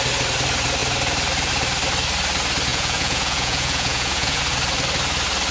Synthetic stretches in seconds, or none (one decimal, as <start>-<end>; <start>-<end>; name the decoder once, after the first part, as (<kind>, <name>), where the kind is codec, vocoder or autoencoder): 2.7-4.4 (vocoder, Vocos)